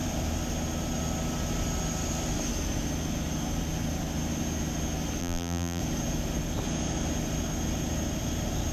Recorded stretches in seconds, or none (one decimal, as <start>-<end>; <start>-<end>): 0.0-5.2; 5.8-8.7